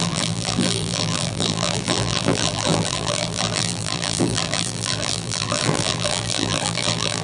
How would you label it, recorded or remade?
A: remade